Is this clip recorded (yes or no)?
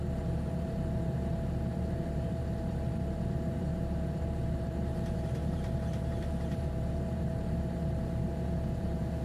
no